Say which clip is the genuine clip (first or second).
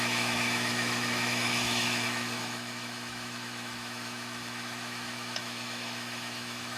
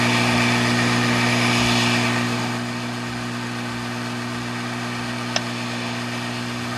second